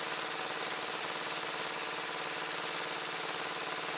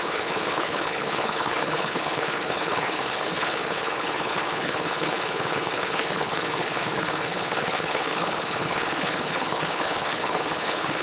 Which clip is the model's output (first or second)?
second